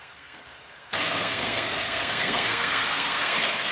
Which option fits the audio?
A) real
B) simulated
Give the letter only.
B